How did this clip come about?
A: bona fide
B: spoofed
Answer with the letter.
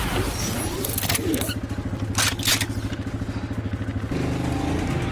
A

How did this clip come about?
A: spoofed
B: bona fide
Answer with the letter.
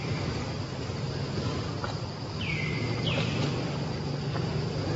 B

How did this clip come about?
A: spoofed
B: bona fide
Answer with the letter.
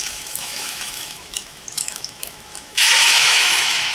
A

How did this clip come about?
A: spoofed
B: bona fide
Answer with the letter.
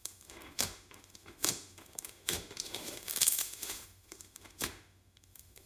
A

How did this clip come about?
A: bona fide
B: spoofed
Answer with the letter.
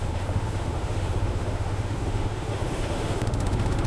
B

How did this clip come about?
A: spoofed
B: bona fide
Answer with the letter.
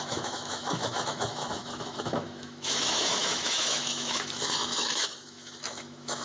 A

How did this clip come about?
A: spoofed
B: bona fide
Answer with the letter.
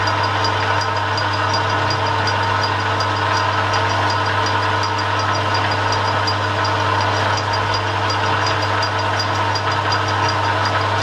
B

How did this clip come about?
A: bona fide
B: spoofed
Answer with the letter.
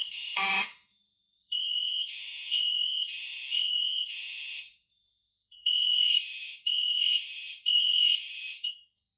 B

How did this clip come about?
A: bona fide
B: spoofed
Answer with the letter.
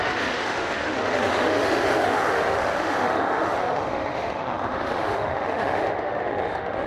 B